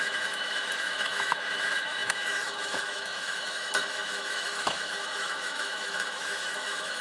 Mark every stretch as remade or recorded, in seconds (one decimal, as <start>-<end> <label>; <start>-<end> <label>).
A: 0.0-7.0 remade